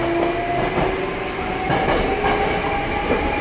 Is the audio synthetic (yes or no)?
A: no